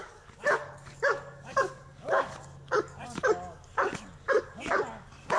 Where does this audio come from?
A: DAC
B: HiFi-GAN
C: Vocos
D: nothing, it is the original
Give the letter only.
A